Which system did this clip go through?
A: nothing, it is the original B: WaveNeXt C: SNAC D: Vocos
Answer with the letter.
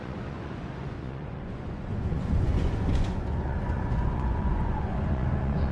D